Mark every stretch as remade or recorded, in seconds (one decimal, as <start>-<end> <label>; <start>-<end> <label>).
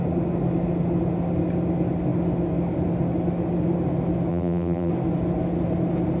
0.0-4.3 recorded; 4.3-4.9 remade; 4.9-6.2 recorded